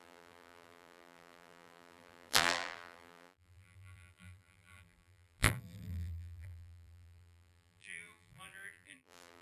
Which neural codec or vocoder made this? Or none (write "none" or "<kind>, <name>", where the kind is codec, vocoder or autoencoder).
vocoder, BigVGAN v2